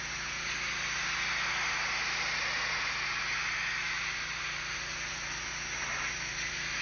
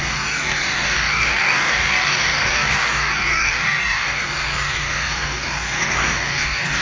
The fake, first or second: second